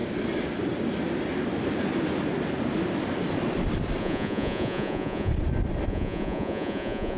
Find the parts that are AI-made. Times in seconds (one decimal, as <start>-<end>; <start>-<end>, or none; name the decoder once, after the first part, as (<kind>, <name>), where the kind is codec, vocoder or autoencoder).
4.0-5.3 (vocoder, Vocos); 5.9-7.2